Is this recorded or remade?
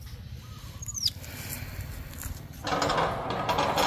recorded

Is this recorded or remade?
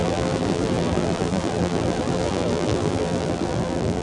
remade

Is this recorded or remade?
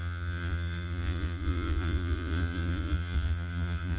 remade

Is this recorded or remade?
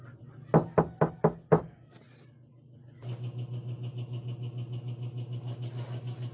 recorded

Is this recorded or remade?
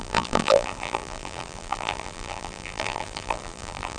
remade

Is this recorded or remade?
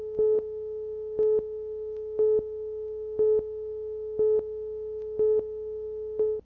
recorded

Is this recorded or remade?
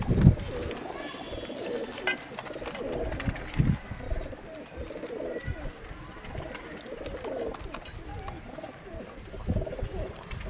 recorded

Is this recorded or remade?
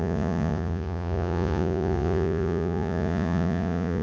remade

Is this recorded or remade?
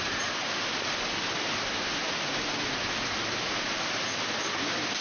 recorded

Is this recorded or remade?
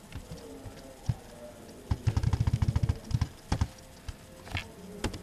recorded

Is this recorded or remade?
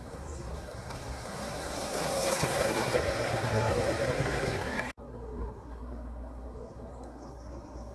remade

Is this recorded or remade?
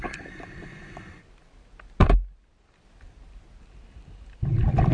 remade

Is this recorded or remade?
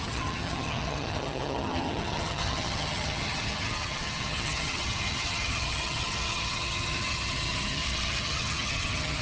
remade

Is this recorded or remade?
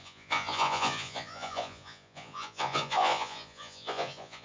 remade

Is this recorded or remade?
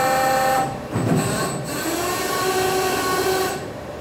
remade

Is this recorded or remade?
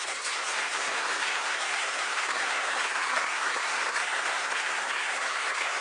remade